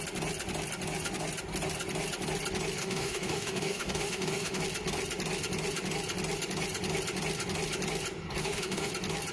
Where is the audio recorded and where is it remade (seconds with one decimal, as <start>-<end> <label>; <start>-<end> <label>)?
0.0-2.8 recorded; 2.8-4.6 remade; 4.6-8.4 recorded; 8.4-8.9 remade; 8.9-9.3 recorded